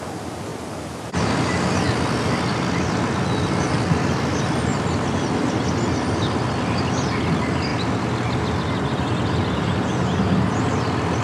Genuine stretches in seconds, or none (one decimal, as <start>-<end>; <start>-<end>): 0.0-11.2